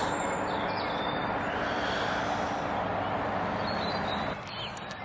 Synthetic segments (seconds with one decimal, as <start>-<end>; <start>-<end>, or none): none